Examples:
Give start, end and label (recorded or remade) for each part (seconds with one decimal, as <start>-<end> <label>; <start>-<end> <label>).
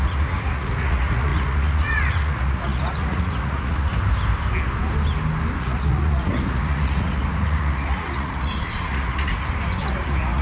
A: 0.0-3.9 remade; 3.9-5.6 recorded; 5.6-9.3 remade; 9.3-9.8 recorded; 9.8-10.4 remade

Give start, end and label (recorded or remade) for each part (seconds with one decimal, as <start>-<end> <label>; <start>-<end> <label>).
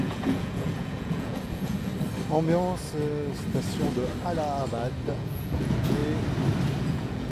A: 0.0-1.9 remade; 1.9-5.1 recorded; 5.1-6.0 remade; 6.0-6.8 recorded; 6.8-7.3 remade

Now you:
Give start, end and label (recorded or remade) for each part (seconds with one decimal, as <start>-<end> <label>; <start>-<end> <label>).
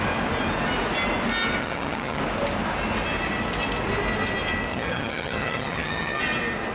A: 0.0-1.6 recorded; 1.6-2.2 remade; 2.2-4.7 recorded; 4.7-6.2 remade; 6.2-6.7 recorded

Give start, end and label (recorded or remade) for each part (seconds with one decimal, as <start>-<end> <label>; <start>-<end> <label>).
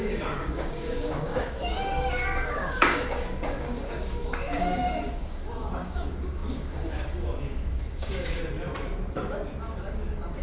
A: 0.0-8.4 remade; 8.4-9.6 recorded; 9.6-10.4 remade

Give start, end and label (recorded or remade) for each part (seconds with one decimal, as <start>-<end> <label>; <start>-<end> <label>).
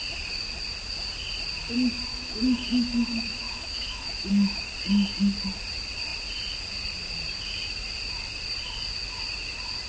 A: 0.0-2.1 recorded; 2.1-4.6 remade; 4.6-9.9 recorded